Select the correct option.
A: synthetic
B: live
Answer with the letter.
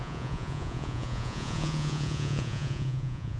A